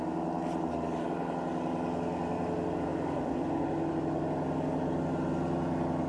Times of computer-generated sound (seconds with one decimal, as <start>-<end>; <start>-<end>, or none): 2.9-3.9